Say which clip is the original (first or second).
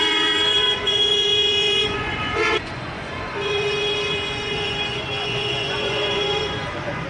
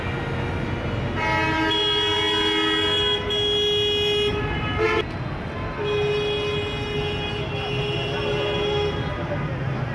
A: second